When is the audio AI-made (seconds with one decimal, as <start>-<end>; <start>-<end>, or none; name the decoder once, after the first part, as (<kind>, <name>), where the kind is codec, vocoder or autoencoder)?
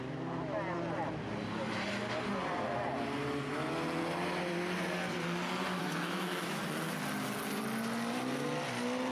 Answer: 5.7-6.6 (autoencoder, DAC-VAE)